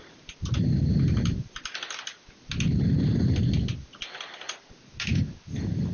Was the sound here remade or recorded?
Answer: recorded